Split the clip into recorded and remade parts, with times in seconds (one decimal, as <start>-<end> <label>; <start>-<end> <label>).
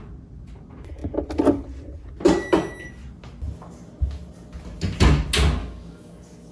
0.0-5.6 recorded; 5.6-6.5 remade